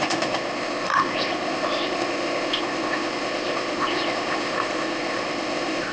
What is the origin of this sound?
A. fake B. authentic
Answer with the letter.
A